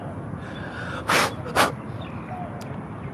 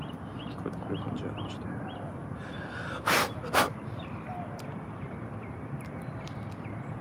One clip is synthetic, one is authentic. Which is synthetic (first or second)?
second